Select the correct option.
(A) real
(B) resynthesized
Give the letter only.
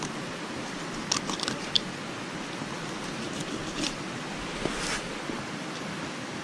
A